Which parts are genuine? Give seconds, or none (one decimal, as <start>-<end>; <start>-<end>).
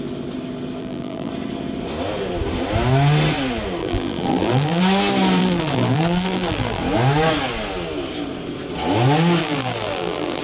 0.0-0.8; 1.3-3.8; 4.8-5.4; 6.8-9.4